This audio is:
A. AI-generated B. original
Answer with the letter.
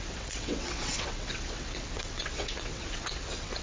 A